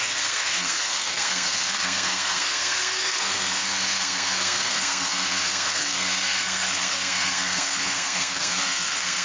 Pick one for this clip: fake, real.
fake